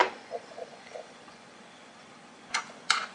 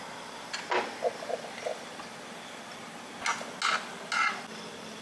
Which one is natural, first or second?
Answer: second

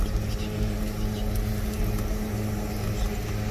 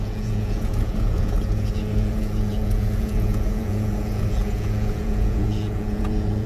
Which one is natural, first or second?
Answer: first